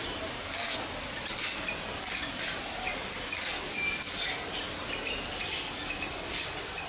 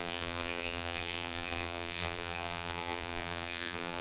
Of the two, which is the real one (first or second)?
first